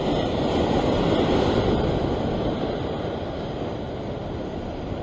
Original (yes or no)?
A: yes